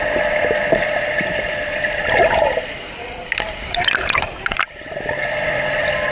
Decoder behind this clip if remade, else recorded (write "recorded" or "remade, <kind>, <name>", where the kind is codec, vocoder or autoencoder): remade, vocoder, BigVGAN v2